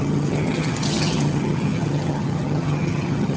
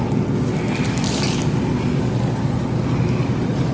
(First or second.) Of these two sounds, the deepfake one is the first